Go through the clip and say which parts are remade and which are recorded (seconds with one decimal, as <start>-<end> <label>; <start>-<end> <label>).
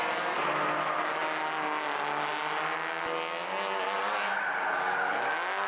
0.0-5.7 recorded